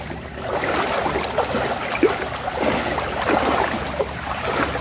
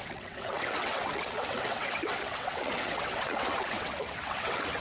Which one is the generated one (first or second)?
second